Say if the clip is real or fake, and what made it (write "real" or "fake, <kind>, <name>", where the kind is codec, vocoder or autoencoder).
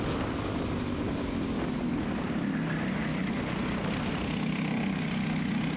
real